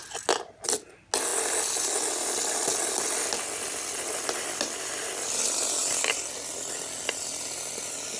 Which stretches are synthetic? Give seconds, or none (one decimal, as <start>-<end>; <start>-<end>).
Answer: none